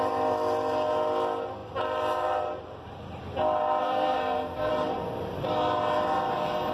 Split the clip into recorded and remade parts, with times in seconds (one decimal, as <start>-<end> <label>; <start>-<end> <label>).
0.0-3.8 recorded; 3.8-4.7 remade; 4.7-6.7 recorded